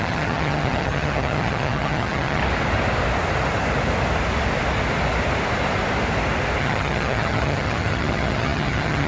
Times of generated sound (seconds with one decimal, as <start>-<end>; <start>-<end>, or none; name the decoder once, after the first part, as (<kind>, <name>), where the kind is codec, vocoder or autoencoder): 0.0-2.4 (vocoder, HiFi-GAN); 6.6-9.1